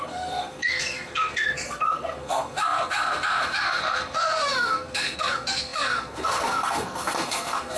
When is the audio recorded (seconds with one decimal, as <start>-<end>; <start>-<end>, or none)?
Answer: none